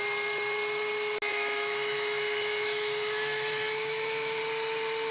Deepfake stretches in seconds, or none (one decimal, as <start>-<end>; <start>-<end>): 1.3-4.4